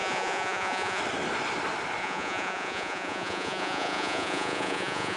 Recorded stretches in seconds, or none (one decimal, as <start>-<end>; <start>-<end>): 1.0-2.0